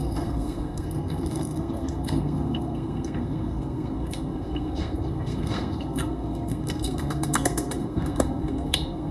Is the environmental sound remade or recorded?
remade